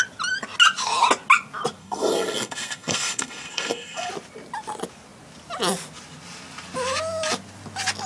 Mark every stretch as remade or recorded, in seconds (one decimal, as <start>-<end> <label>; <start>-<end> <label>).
0.0-1.8 recorded; 1.8-4.1 remade; 4.1-8.1 recorded